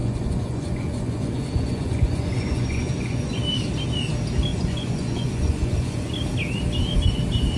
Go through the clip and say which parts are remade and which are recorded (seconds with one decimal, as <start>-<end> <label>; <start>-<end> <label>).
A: 0.0-3.3 remade; 3.3-4.5 recorded; 4.5-6.1 remade; 6.1-7.6 recorded